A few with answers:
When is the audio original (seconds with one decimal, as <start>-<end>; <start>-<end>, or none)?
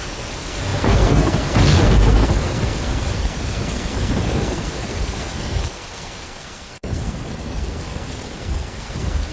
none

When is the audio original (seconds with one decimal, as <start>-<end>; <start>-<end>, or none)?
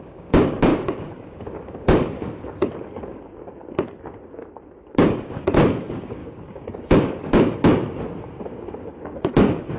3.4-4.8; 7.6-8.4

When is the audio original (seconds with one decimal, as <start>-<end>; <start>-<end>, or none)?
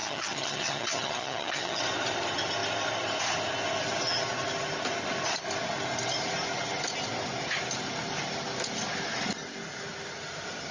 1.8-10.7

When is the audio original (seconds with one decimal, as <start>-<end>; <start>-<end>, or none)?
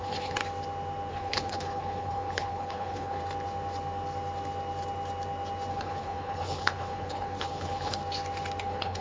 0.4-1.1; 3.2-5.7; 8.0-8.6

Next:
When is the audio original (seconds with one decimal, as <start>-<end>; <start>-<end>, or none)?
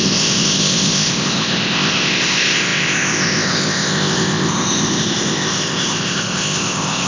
none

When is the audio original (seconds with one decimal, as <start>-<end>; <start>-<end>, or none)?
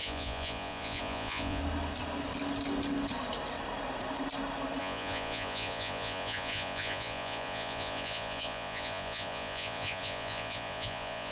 1.6-4.8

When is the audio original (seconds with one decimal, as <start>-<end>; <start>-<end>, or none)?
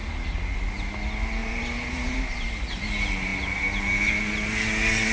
0.6-1.4; 2.5-5.1